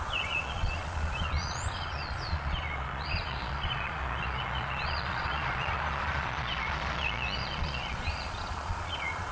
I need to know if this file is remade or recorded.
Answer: remade